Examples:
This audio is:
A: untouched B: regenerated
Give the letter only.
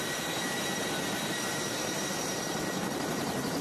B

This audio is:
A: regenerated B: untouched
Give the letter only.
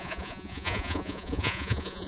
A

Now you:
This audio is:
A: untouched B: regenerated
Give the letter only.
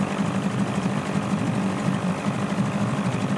B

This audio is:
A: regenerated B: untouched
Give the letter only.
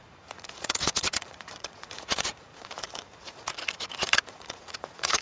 A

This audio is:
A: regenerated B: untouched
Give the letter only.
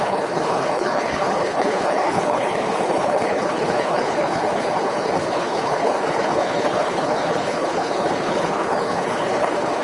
A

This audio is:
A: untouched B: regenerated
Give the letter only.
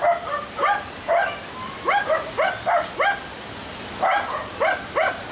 A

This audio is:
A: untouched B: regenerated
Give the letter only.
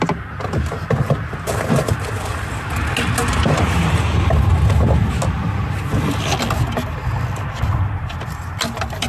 A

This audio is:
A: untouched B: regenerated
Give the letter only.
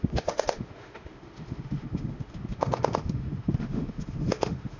B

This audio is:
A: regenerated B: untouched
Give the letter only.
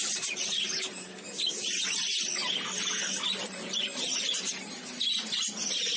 B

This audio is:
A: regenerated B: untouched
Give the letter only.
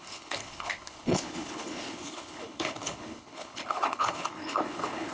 A